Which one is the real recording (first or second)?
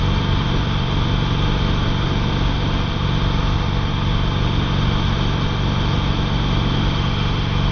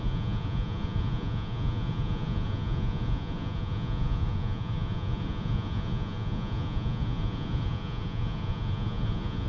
first